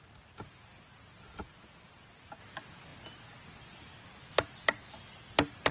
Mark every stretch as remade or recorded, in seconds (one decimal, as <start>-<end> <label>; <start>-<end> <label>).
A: 0.0-5.7 recorded